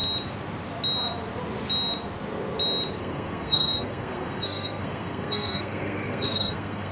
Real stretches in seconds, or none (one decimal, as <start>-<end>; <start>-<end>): 0.0-3.0